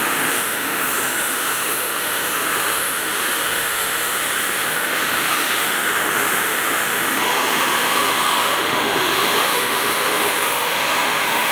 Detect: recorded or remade remade